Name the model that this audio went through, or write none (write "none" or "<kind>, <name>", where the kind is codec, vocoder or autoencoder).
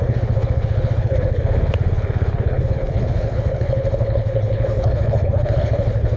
codec, HILCodec